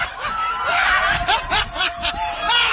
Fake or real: fake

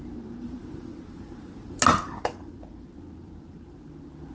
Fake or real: fake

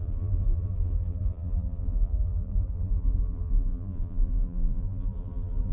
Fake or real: fake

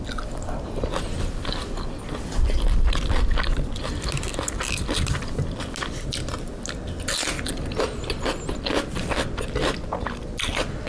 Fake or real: real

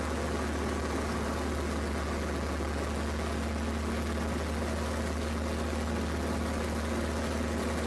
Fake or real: real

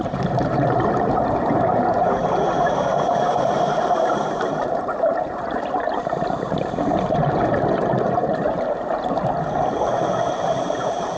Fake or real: fake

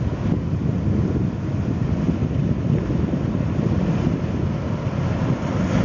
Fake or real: real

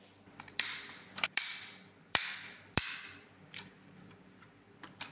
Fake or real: fake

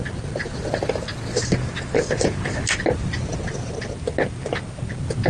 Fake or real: real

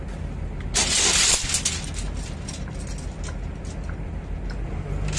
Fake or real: real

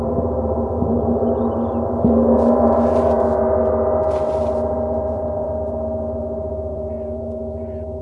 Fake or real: fake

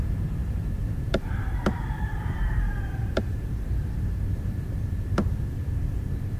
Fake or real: fake